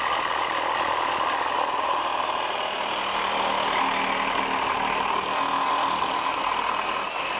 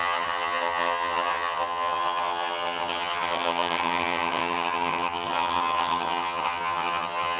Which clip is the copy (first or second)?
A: second